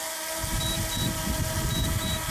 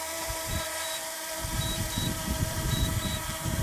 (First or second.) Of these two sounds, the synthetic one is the second